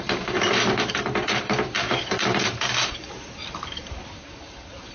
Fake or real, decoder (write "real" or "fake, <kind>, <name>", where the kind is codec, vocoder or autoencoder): fake, vocoder, BigVGAN v2